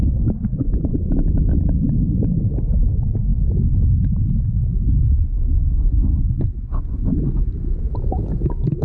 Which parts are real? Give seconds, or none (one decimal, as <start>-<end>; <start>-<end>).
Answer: 0.0-8.8